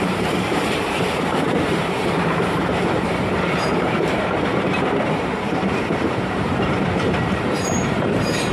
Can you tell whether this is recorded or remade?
remade